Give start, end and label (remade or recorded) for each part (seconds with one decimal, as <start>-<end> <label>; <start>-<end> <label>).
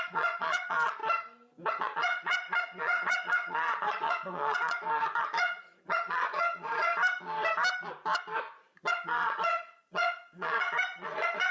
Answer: 0.0-1.0 remade; 1.0-1.8 recorded; 1.8-6.9 remade; 6.9-8.9 recorded; 8.9-11.5 remade